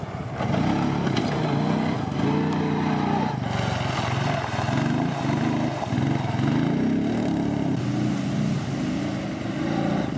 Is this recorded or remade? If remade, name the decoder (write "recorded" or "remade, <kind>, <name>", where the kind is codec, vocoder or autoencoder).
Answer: recorded